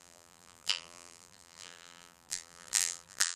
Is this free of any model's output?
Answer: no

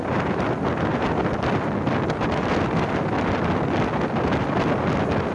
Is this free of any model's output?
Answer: yes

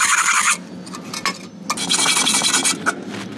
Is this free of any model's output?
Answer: yes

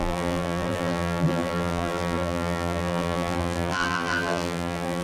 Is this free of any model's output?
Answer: no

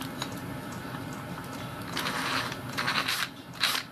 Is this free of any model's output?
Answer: no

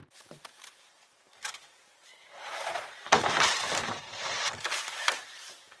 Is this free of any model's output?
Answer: no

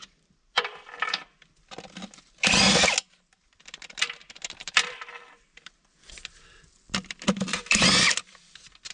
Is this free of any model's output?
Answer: no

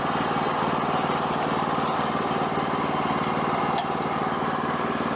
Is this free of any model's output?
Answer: yes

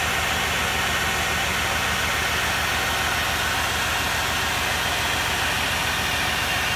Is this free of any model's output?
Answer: yes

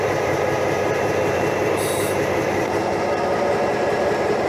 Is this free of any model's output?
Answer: no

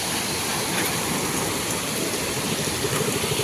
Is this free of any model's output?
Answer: no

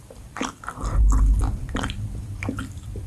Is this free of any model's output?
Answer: no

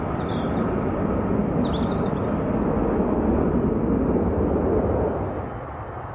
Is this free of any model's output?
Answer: yes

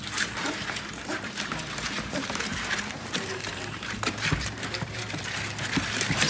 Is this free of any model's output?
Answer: no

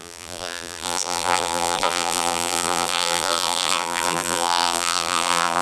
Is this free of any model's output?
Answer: no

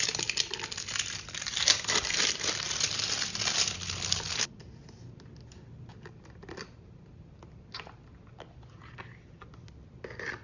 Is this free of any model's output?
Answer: yes